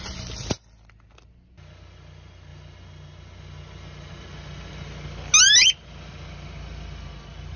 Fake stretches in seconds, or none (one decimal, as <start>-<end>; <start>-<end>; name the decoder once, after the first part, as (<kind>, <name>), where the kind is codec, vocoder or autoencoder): none

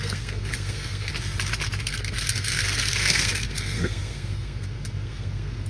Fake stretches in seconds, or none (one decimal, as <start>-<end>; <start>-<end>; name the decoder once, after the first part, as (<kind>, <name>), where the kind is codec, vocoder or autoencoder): 0.0-1.1 (codec, SNAC); 1.8-5.7